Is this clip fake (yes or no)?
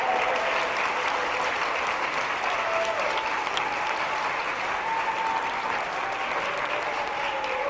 no